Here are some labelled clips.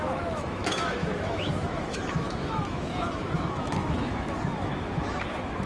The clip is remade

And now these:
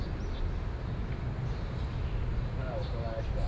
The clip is recorded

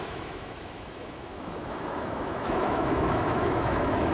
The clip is remade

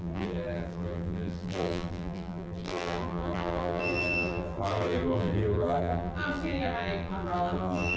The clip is remade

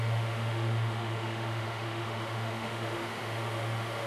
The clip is remade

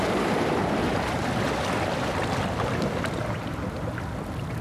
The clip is recorded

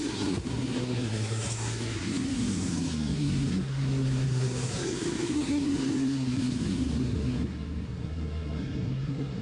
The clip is remade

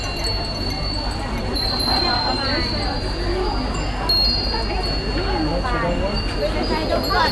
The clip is recorded